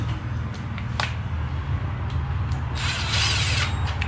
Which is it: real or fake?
real